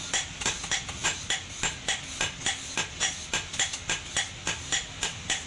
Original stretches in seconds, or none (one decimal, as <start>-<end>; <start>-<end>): 0.0-5.5